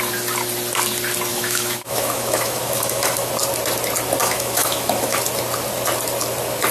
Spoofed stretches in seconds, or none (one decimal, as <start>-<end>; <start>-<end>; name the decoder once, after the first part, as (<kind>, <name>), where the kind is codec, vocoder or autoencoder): 1.3-3.3 (autoencoder, DAC-VAE); 4.2-5.2